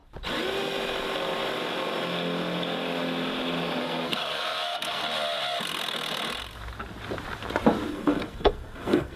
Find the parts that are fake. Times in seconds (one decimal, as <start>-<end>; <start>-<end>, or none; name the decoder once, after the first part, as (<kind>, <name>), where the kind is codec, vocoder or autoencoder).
3.8-5.0 (codec, SNAC); 7.9-9.2